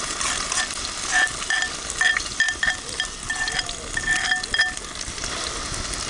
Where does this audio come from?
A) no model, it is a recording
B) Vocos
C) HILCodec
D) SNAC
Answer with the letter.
A